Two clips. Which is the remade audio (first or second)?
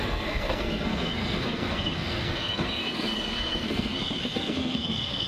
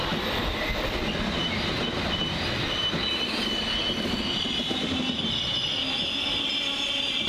first